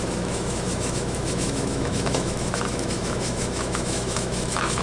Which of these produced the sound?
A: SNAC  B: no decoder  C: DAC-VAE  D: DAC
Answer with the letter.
C